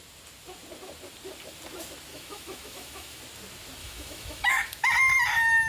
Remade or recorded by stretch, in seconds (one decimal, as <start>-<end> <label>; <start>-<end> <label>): 0.0-2.1 recorded; 2.1-3.2 remade; 3.2-3.8 recorded; 3.8-4.9 remade; 4.9-5.7 recorded